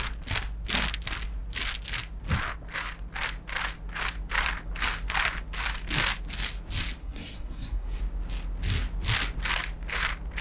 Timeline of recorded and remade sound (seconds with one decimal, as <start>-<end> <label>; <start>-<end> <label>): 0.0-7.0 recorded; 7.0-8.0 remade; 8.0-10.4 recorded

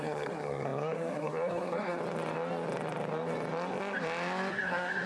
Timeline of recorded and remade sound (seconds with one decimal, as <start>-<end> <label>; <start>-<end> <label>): 0.0-2.0 remade; 2.0-4.5 recorded; 4.5-5.1 remade

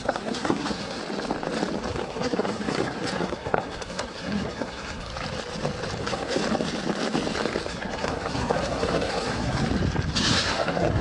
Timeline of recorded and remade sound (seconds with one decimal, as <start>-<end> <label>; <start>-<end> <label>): 0.0-1.0 remade; 1.0-1.9 recorded; 1.9-5.1 remade; 5.1-6.0 recorded; 6.0-6.4 remade; 6.4-7.7 recorded; 7.7-9.6 remade; 9.6-10.1 recorded; 10.1-11.0 remade

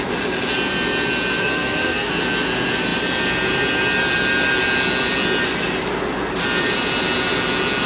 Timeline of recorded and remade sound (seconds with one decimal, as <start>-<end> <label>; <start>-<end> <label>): 0.0-1.4 recorded; 1.4-2.1 remade; 2.1-7.9 recorded